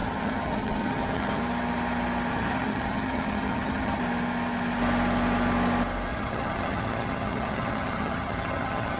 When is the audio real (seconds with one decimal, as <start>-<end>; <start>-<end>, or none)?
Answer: 1.4-2.3; 4.0-6.1